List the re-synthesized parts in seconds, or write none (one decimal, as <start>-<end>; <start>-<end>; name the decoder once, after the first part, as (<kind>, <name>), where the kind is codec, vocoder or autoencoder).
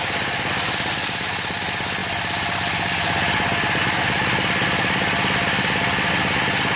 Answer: none